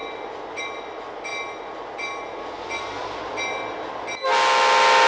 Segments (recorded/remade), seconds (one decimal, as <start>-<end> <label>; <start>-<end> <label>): 0.0-5.1 recorded